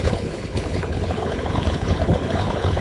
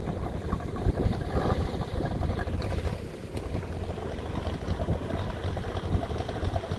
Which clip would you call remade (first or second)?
first